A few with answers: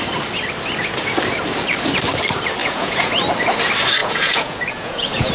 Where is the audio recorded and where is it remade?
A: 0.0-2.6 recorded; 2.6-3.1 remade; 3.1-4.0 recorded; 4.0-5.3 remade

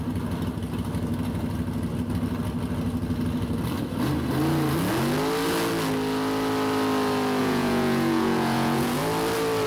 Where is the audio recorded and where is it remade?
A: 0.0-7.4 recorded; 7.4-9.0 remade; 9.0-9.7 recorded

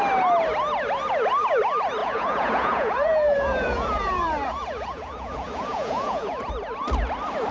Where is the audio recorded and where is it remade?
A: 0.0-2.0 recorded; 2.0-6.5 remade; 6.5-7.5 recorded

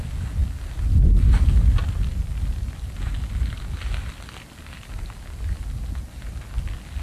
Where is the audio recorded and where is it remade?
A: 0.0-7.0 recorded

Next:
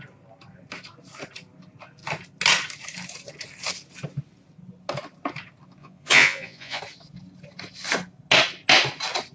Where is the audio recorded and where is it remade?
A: 0.0-5.8 recorded; 5.8-6.8 remade; 6.8-9.3 recorded

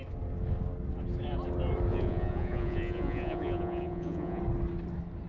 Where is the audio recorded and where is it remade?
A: 0.0-1.9 recorded; 1.9-4.4 remade; 4.4-5.3 recorded

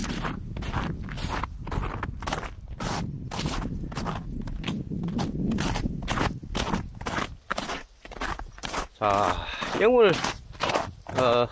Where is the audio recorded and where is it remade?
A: 0.0-7.5 recorded; 7.5-8.9 remade; 8.9-11.5 recorded

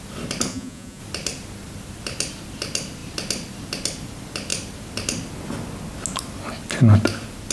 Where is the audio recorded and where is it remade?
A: 0.0-0.5 recorded; 0.5-1.0 remade; 1.0-7.5 recorded